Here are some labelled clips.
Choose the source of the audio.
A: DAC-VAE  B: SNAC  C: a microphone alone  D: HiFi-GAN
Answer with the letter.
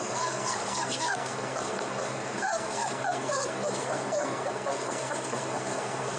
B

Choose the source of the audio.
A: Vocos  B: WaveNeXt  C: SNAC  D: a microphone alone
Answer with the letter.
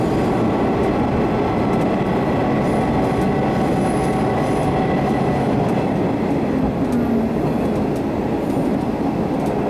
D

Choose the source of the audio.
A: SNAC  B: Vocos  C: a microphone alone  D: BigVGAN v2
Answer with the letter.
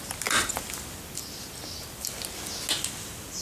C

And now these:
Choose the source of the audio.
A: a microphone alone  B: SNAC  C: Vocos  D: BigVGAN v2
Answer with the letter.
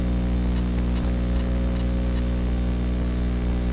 A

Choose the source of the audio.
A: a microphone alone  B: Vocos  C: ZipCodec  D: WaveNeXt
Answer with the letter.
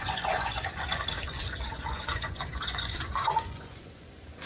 B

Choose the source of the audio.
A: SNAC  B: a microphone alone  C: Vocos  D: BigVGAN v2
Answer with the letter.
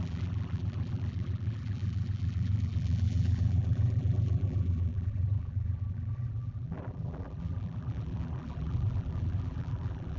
D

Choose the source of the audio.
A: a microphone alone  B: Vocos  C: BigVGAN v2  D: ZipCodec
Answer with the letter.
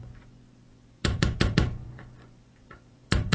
B